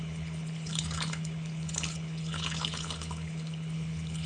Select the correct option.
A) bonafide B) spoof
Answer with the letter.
B